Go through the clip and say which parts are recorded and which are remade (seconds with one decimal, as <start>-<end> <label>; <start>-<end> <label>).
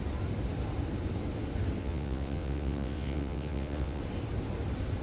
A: 0.0-1.8 recorded; 1.8-4.0 remade; 4.0-5.0 recorded